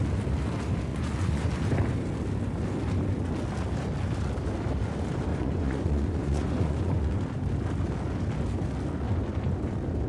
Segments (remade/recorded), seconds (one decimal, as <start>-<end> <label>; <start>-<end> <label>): 0.0-0.9 recorded; 0.9-1.5 remade; 1.5-5.3 recorded; 5.3-7.1 remade; 7.1-10.1 recorded